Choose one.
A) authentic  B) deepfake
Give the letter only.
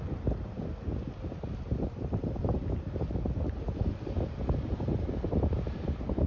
A